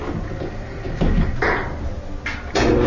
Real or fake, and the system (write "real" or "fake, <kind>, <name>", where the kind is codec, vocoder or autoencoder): real